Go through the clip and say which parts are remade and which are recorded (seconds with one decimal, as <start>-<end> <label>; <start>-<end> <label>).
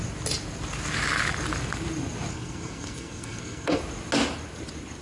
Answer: 0.0-2.3 recorded; 2.3-3.8 remade; 3.8-5.0 recorded